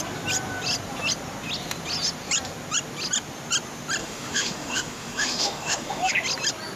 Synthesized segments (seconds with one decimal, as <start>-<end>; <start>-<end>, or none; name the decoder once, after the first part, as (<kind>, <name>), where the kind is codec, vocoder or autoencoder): 4.0-6.1 (autoencoder, DAC-VAE)